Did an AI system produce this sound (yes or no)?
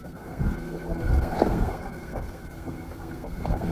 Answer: yes